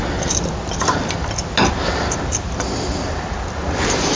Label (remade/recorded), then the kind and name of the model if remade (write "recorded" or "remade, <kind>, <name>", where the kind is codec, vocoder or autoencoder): recorded